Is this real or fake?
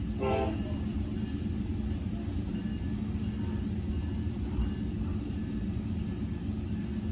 real